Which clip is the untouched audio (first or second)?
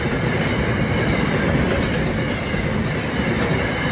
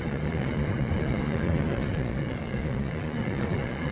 first